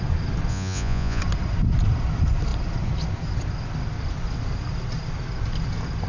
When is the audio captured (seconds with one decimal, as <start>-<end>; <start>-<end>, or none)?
0.0-0.5; 1.2-6.1